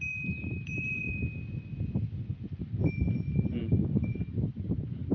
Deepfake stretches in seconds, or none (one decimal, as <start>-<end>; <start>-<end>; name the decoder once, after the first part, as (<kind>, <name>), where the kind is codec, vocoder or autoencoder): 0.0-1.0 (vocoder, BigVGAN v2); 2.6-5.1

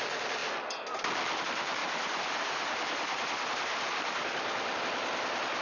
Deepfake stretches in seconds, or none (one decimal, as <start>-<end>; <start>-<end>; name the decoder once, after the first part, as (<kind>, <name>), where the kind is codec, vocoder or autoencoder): 1.8-4.8 (vocoder, BigVGAN v2)

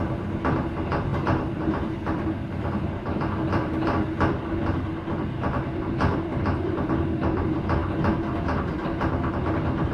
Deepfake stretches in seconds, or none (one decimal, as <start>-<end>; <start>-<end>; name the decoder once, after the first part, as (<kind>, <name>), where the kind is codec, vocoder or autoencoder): 0.0-7.8 (vocoder, BigVGAN v2); 8.6-9.9

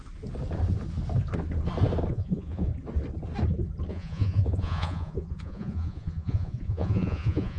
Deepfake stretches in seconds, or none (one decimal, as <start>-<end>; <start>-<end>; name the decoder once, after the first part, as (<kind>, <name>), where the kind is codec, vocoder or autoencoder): 2.1-2.7 (vocoder, Vocos); 3.9-7.6

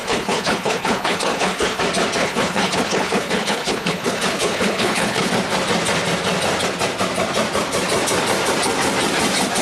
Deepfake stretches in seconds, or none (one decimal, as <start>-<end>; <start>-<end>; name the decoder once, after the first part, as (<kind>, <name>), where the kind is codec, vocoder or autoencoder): 0.0-1.8 (codec, HILCodec); 2.2-5.3